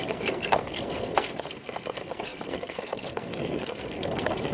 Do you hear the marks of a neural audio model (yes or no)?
yes